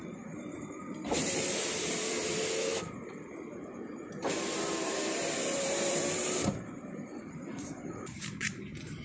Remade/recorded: remade